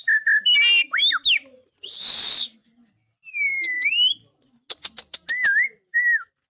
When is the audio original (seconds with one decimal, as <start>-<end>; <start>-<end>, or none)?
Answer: 0.0-6.5